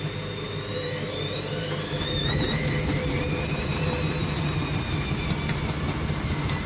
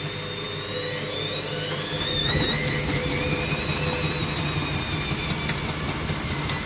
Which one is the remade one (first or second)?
first